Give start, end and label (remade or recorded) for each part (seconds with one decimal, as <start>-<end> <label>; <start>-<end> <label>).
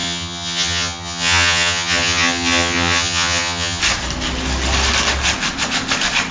0.0-3.8 remade; 3.8-6.3 recorded